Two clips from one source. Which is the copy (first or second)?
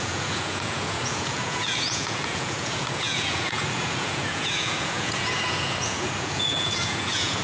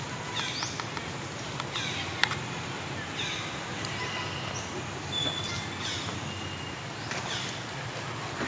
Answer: first